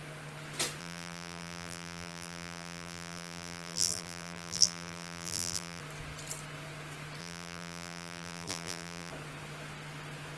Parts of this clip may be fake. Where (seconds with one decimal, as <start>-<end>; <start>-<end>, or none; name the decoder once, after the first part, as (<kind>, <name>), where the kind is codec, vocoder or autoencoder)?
0.8-5.8 (vocoder, BigVGAN v2); 7.2-9.1